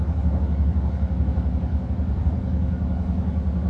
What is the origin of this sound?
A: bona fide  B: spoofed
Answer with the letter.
B